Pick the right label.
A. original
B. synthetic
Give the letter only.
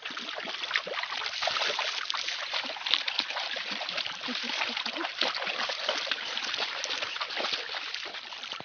A